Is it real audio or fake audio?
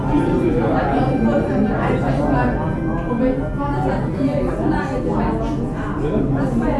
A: real